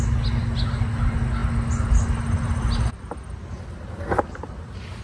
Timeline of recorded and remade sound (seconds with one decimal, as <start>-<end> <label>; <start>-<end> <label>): 0.0-5.0 recorded